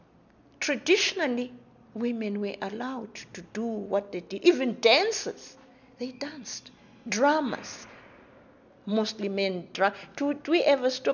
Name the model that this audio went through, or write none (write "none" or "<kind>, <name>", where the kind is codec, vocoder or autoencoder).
none